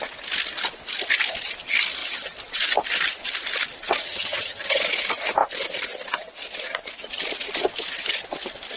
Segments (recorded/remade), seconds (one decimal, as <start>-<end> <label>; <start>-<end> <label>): 0.0-4.0 recorded; 4.0-4.8 remade; 4.8-8.8 recorded